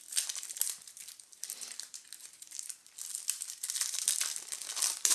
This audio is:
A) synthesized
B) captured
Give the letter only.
A